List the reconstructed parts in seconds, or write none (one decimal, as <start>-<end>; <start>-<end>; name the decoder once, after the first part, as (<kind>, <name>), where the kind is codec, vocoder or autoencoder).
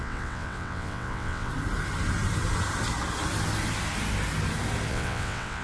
0.0-1.5 (vocoder, WaveNeXt); 4.9-5.6